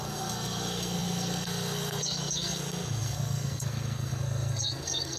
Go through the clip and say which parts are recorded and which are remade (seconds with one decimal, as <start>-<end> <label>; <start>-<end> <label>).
0.0-5.2 remade